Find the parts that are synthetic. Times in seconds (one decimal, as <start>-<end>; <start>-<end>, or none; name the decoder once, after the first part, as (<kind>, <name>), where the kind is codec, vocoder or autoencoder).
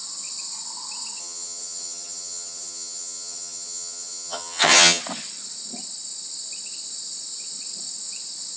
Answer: 1.2-5.0 (vocoder, HiFi-GAN)